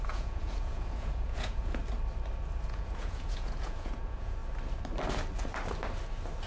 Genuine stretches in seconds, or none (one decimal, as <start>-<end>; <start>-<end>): 1.8-2.6; 4.4-6.5